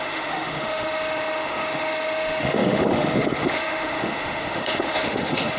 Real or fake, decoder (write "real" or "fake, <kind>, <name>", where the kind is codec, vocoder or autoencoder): fake, autoencoder, DAC-VAE